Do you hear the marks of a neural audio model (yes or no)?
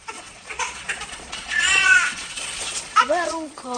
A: yes